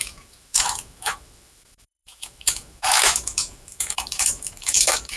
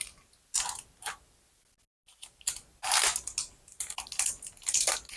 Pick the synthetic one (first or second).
first